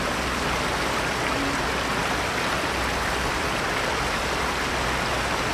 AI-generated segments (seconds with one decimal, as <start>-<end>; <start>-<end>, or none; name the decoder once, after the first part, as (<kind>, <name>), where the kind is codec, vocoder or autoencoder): none